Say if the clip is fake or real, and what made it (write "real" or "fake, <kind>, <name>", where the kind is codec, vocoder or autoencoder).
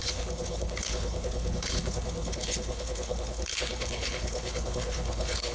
fake, codec, HILCodec